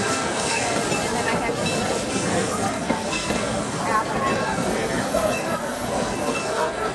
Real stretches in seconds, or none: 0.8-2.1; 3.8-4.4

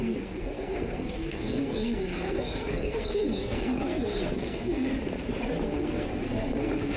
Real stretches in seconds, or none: 4.9-5.6

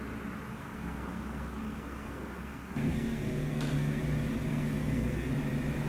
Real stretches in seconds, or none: 0.0-0.5; 4.0-4.5; 5.3-5.9

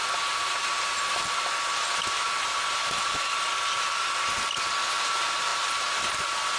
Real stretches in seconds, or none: 0.0-6.6

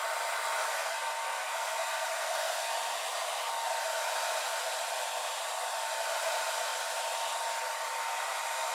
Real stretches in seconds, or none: 0.0-0.6; 2.7-8.7

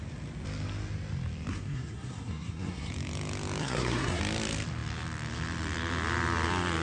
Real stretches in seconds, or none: 0.0-1.5; 2.9-3.6; 4.2-6.8